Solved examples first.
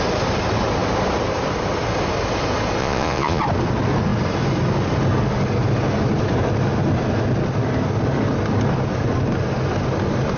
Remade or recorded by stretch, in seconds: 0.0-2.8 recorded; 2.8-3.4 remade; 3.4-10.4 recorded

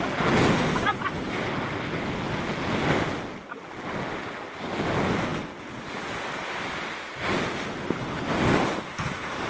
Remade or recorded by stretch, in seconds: 0.0-9.5 recorded

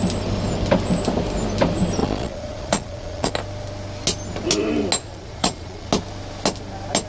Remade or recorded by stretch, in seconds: 0.0-2.0 recorded; 2.0-3.3 remade; 3.3-5.0 recorded; 5.0-5.9 remade; 5.9-7.1 recorded

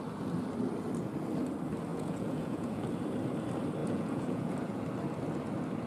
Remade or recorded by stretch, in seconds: 0.0-1.9 recorded; 1.9-2.8 remade; 2.8-3.8 recorded; 3.8-4.8 remade; 4.8-5.9 recorded

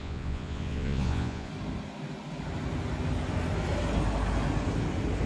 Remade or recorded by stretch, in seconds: 0.0-1.5 remade; 1.5-5.3 recorded

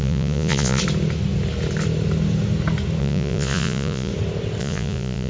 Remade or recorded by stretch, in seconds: 0.0-0.8 remade; 0.8-3.0 recorded; 3.0-4.1 remade; 4.1-4.6 recorded; 4.6-5.3 remade

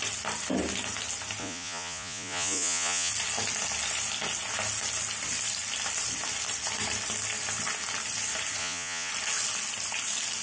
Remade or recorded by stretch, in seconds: 0.0-1.4 recorded; 1.4-3.1 remade; 3.1-8.6 recorded; 8.6-9.1 remade; 9.1-10.4 recorded